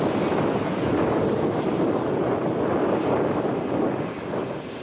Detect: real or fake real